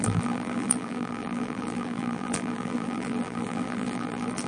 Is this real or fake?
fake